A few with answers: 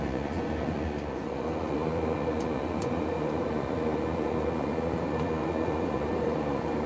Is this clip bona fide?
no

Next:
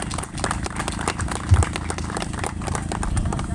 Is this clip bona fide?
yes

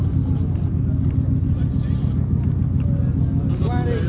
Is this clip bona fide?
yes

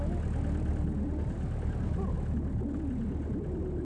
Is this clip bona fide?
yes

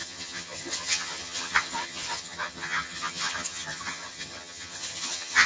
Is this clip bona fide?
no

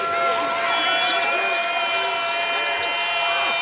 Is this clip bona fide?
yes